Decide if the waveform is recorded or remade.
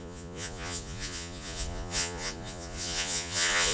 remade